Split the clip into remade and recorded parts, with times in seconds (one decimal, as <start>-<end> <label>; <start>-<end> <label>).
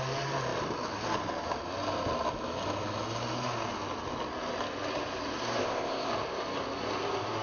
0.0-5.6 recorded; 5.6-6.1 remade; 6.1-7.4 recorded